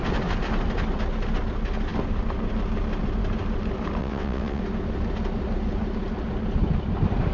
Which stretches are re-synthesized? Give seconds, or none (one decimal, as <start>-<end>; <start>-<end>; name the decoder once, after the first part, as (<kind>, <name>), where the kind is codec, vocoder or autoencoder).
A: 4.0-4.6 (vocoder, WaveNeXt)